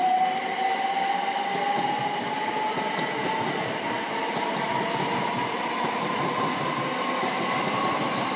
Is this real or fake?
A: real